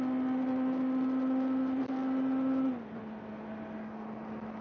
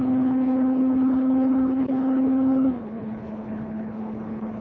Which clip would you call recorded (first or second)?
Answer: first